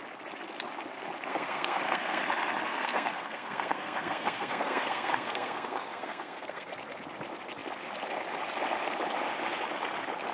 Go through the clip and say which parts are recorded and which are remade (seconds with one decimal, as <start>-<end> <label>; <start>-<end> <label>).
0.0-1.3 recorded; 1.3-2.2 remade; 2.2-2.7 recorded; 2.7-6.7 remade; 6.7-10.3 recorded